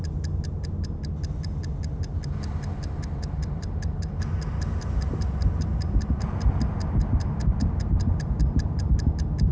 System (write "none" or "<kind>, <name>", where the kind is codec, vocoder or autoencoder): none